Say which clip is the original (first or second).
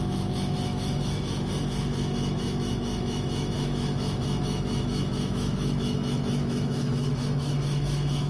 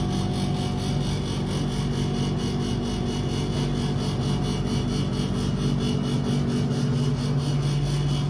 second